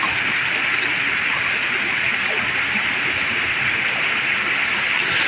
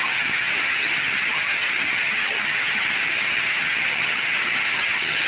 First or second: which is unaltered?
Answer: first